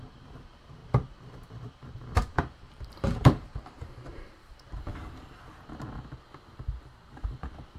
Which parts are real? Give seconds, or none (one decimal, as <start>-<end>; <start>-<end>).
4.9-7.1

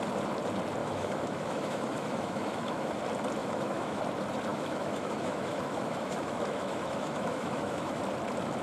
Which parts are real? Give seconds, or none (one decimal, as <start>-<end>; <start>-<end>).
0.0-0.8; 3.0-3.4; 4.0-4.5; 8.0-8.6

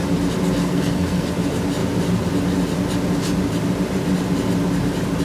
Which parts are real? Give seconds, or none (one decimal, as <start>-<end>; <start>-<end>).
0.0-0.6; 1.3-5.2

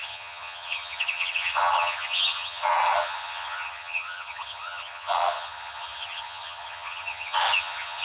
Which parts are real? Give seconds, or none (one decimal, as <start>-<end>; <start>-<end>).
none

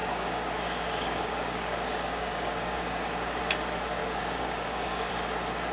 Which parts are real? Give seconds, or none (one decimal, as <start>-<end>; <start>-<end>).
3.4-4.0; 5.1-5.7

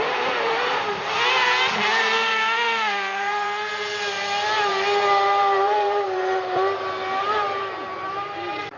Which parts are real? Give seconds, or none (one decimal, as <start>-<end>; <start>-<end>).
0.9-2.0